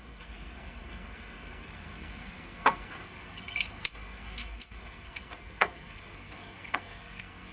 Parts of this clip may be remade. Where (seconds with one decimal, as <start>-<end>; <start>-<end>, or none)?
0.0-7.5